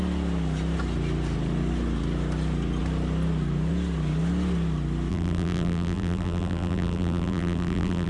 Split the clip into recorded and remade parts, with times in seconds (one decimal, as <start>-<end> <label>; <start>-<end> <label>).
0.0-5.1 recorded; 5.1-8.1 remade